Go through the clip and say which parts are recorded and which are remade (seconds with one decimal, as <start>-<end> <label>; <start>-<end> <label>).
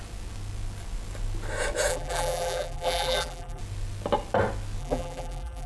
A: 0.0-1.9 recorded; 1.9-3.6 remade; 3.6-4.8 recorded; 4.8-5.7 remade